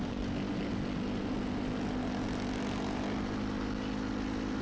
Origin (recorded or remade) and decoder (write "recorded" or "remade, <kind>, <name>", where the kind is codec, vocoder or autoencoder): recorded